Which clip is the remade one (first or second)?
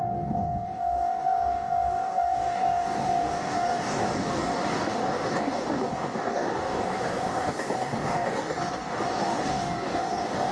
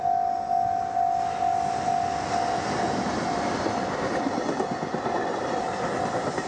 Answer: first